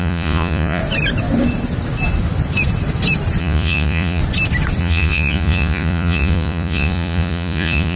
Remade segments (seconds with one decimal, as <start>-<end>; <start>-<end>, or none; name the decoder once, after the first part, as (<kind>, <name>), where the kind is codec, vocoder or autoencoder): 0.0-0.8 (vocoder, Vocos); 3.4-4.2; 4.8-8.0